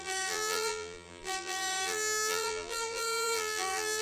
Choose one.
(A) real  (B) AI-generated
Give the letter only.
B